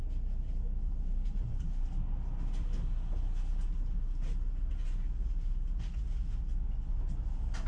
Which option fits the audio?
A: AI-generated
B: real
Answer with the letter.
B